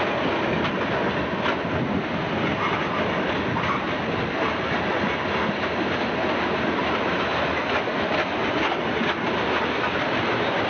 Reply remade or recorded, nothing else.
recorded